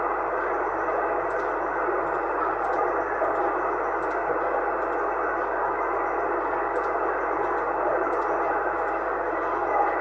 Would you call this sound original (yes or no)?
yes